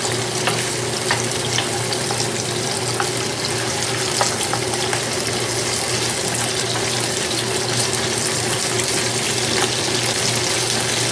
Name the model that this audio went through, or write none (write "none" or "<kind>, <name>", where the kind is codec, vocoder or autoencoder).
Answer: none